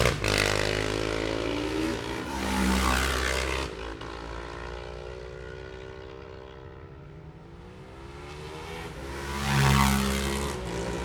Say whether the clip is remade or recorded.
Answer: recorded